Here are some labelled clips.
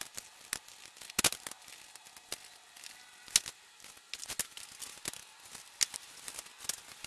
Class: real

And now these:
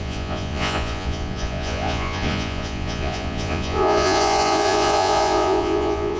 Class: fake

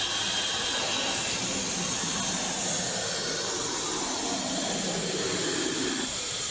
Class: real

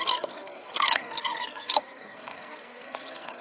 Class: fake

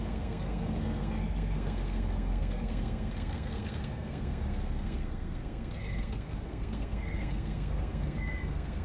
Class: fake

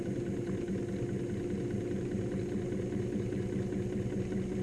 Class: real